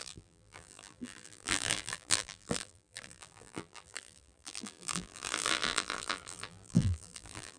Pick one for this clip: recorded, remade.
remade